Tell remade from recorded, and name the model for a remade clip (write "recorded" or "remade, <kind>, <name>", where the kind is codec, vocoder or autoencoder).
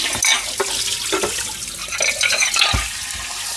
recorded